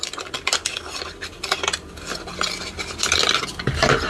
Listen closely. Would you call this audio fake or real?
real